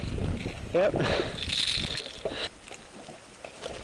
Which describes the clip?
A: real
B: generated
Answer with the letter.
A